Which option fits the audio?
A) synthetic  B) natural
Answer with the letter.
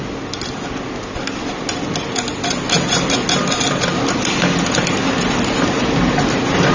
B